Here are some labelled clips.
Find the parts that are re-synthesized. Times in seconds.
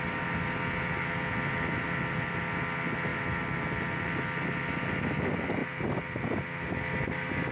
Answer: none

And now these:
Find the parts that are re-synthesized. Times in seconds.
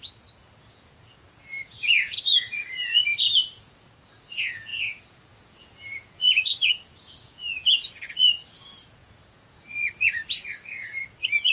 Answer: 0.0-11.5 (vocoder, Vocos)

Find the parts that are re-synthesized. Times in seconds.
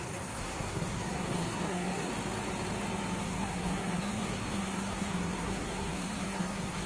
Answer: 0.0-2.1 (codec, SNAC); 3.2-6.9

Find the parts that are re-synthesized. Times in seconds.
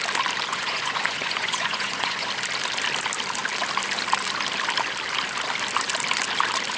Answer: 0.5-2.3 (vocoder, Vocos)